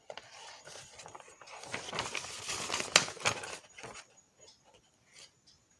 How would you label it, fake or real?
real